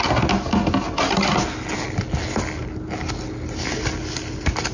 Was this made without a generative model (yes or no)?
yes